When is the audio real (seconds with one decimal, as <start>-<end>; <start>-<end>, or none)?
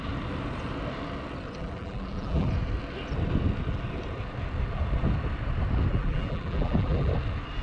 0.0-1.6; 2.5-5.9; 7.1-7.6